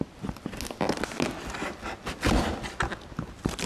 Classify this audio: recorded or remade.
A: recorded